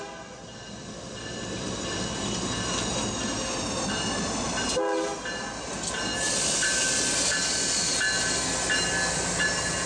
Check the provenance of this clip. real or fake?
real